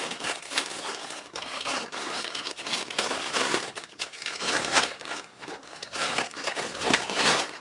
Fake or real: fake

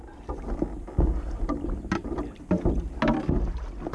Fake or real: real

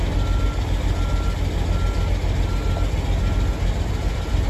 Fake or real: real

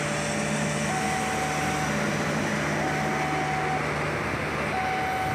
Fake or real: real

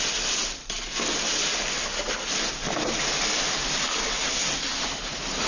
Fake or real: real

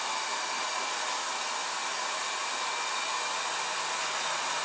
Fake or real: real